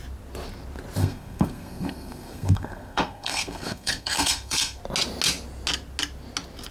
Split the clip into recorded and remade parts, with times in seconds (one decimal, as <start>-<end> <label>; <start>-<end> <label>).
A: 0.0-1.0 recorded; 1.0-4.8 remade; 4.8-6.7 recorded